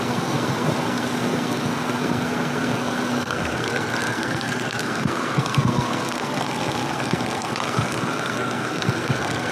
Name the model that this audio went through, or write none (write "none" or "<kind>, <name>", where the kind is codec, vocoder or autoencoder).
codec, SNAC